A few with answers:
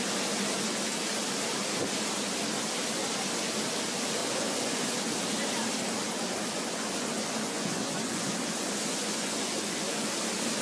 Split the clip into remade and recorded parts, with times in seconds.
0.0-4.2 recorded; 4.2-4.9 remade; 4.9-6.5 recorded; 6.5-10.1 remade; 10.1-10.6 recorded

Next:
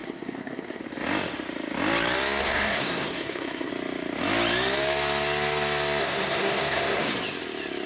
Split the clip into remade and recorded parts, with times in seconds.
0.0-0.8 remade; 0.8-2.4 recorded; 2.4-3.7 remade; 3.7-6.0 recorded; 6.0-7.1 remade; 7.1-7.9 recorded